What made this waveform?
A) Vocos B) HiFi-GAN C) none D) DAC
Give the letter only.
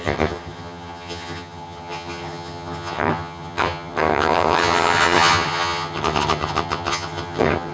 B